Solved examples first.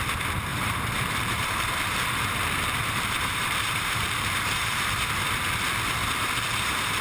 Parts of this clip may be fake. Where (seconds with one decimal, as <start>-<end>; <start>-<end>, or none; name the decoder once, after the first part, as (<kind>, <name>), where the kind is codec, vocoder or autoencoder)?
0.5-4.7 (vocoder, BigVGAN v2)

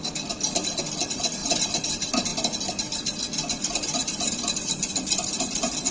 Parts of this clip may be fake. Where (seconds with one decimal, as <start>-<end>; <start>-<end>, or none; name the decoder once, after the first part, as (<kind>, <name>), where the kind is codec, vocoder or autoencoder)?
1.4-1.9 (vocoder, BigVGAN v2)

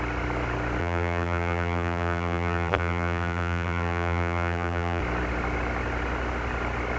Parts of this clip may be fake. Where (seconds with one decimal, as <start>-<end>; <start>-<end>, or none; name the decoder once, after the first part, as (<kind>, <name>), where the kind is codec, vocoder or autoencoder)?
0.8-5.0 (vocoder, BigVGAN v2)

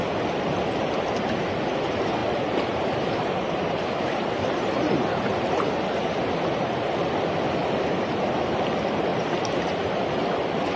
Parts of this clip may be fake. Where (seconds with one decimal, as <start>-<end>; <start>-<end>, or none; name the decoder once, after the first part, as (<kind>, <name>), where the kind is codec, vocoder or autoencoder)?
2.2-5.7 (vocoder, BigVGAN v2); 7.6-8.3; 9.1-10.2